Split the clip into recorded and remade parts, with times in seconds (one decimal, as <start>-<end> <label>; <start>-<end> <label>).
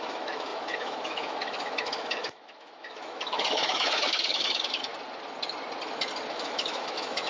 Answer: 0.0-4.9 remade; 4.9-6.3 recorded; 6.3-7.3 remade